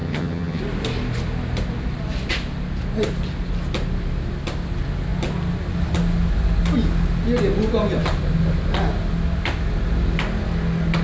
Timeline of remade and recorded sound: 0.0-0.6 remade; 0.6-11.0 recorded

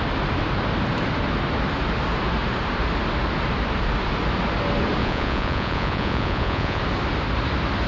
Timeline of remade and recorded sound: 0.0-5.0 recorded; 5.0-6.8 remade; 6.8-7.9 recorded